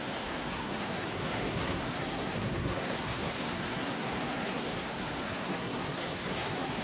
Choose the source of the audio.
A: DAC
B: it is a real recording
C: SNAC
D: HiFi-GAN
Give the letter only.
C